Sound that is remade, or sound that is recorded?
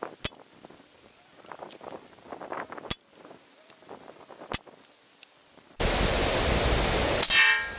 recorded